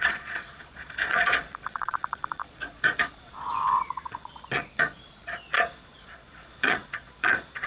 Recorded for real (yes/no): no